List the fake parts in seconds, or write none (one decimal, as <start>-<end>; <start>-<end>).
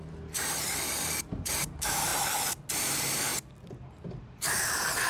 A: 0.0-2.1; 2.7-3.3; 4.2-5.1